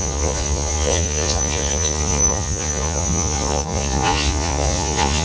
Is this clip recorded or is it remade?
remade